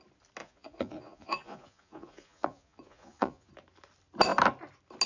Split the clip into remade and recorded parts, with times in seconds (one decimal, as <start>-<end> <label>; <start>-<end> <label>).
0.0-0.4 recorded; 0.4-3.5 remade; 3.5-5.1 recorded